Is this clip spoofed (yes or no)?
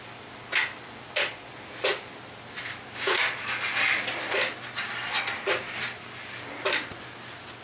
no